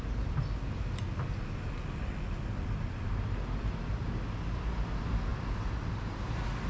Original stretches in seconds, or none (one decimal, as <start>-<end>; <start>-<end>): 0.0-6.7